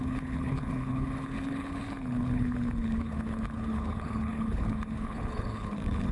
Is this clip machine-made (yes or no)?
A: yes